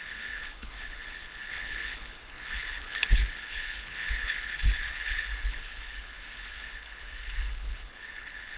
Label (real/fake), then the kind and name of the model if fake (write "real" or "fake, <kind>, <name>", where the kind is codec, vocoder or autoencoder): fake, codec, HILCodec